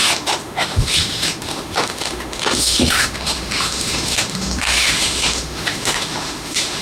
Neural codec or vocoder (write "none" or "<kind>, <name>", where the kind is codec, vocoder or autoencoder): autoencoder, DAC-VAE